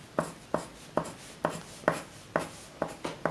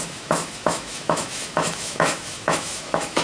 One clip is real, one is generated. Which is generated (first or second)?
second